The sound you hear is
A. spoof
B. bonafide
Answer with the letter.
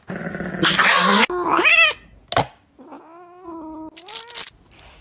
B